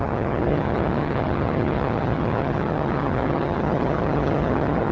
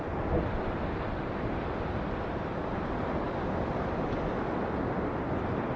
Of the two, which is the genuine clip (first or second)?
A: second